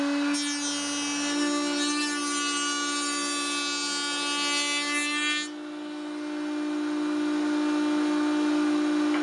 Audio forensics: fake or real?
real